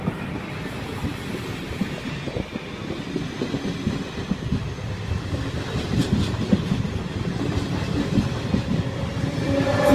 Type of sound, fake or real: real